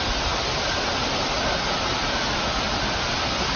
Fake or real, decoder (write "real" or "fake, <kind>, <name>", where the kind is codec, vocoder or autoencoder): real